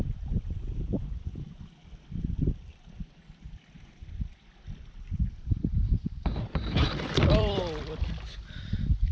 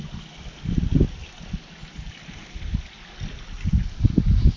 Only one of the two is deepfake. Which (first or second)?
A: first